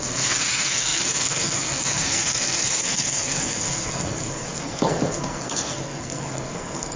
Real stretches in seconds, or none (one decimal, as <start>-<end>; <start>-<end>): none